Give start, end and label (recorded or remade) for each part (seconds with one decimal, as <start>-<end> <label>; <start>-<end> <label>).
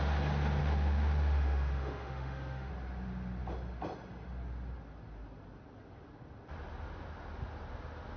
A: 0.0-0.6 recorded; 0.6-2.7 remade; 2.7-8.2 recorded